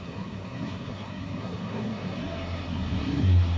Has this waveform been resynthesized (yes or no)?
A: yes